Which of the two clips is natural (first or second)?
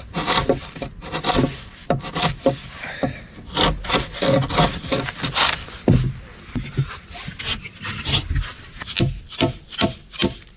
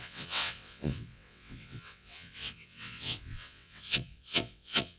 first